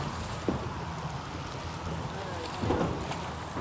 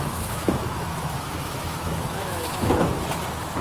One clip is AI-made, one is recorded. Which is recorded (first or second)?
first